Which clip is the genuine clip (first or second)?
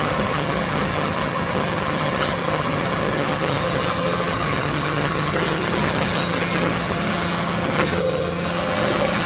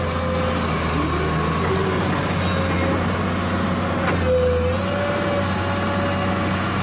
second